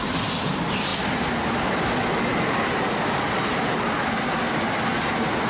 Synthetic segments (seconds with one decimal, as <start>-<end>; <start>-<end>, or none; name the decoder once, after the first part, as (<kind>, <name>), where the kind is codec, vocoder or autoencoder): none